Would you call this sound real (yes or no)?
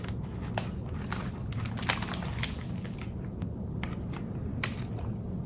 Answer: yes